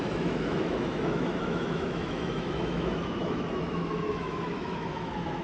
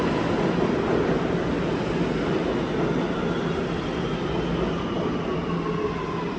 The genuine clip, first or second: second